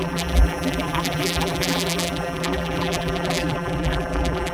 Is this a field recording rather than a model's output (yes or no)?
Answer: no